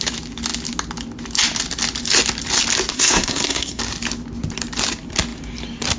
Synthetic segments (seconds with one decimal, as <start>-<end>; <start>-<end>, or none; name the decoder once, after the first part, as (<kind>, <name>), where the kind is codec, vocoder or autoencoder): 2.9-3.8 (codec, SNAC)